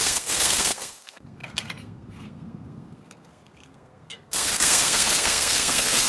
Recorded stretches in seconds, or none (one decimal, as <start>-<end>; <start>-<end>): none